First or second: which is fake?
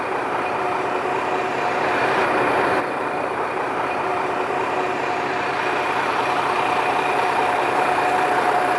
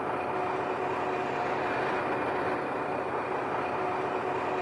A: first